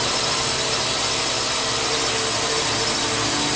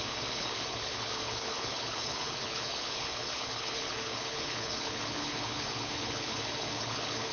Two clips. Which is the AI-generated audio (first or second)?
second